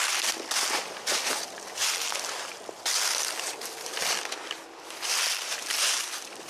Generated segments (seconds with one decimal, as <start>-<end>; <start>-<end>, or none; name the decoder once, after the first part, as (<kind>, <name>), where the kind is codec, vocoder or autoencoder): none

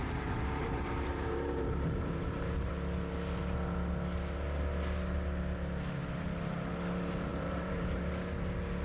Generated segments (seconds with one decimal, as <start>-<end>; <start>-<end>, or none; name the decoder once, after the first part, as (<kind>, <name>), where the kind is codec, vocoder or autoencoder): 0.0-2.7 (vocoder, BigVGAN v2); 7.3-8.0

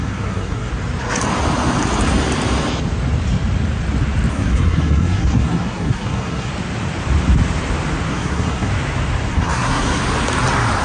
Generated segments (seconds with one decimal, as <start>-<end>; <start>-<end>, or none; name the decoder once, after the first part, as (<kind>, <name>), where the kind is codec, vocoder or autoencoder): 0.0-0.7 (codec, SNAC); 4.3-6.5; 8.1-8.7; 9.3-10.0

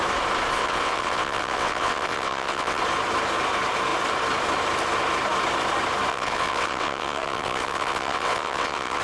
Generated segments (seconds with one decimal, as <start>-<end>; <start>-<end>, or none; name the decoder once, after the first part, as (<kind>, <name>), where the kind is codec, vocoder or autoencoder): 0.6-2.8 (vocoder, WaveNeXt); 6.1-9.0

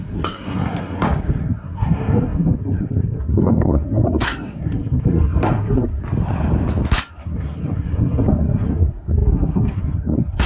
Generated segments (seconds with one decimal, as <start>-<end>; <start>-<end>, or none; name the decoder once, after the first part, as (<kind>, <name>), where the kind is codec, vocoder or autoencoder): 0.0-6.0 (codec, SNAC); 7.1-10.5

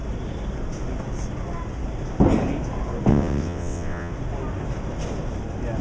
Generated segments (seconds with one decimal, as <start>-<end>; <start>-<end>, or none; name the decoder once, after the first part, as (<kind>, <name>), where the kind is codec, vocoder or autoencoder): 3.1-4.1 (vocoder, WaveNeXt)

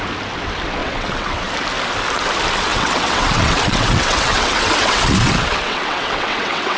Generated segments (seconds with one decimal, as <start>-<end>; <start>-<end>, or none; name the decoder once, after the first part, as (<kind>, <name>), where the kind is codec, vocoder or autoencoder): 0.8-1.5 (vocoder, WaveNeXt); 2.7-6.8